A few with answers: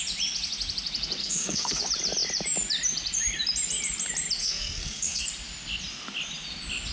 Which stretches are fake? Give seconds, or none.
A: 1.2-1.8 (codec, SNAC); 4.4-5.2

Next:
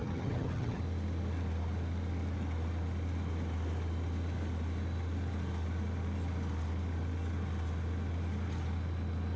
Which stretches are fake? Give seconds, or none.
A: 0.0-0.8 (vocoder, HiFi-GAN)

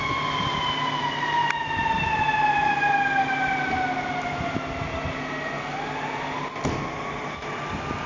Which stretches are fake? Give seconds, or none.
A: none

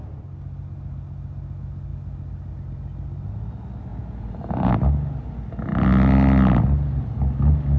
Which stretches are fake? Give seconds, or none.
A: 3.9-4.7 (vocoder, Vocos)

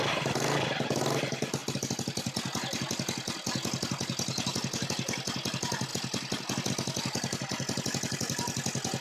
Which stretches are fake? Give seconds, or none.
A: none

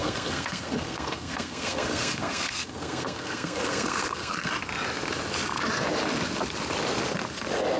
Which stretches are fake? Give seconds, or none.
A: 0.0-4.5 (codec, SNAC)